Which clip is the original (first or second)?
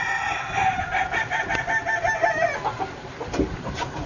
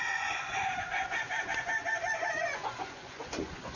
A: first